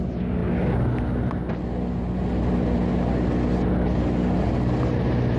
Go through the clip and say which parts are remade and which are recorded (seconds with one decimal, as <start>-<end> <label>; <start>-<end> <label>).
0.0-5.4 recorded